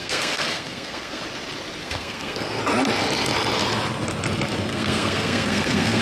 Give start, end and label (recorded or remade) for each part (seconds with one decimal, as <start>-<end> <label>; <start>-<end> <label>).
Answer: 0.0-1.2 remade; 1.2-1.8 recorded; 1.8-2.6 remade; 2.6-4.7 recorded; 4.7-6.0 remade